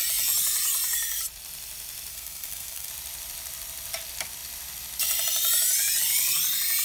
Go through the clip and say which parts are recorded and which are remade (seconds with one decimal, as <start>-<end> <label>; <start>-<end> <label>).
0.0-2.1 recorded; 2.1-2.9 remade; 2.9-6.8 recorded